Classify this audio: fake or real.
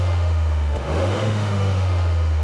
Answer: fake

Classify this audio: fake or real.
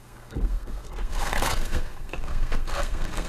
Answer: fake